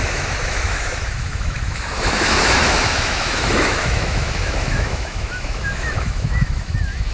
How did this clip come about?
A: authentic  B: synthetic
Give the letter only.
B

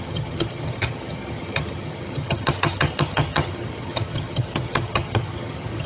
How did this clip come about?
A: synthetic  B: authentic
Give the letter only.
A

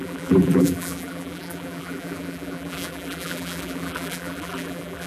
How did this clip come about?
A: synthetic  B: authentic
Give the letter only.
A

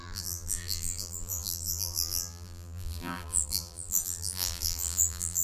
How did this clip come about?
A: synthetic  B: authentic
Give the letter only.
A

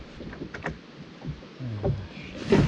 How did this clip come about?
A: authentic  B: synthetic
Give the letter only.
A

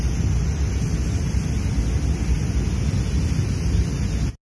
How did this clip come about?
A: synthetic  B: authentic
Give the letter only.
B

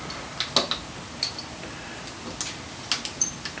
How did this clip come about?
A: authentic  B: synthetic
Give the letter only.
A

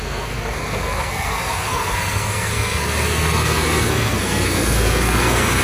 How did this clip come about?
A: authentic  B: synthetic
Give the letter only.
B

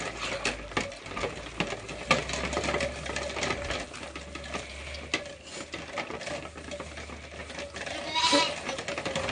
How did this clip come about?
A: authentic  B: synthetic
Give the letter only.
A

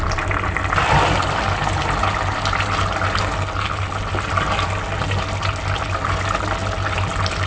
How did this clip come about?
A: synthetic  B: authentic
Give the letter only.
B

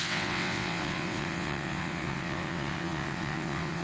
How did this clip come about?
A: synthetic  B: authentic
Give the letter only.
A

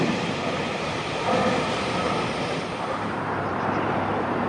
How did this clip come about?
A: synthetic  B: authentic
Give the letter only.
A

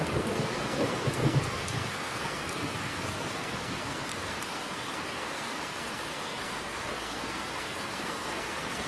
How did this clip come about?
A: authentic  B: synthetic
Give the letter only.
B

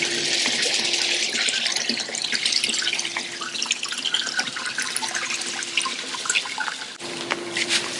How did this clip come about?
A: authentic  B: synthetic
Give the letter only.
B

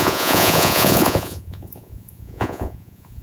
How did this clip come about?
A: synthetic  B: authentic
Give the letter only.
A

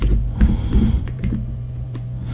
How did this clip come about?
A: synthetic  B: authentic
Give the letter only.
A